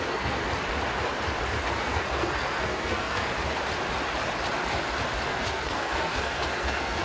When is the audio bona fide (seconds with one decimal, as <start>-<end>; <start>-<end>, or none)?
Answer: 0.4-1.8; 3.3-5.3